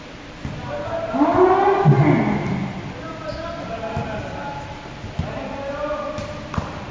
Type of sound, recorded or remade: recorded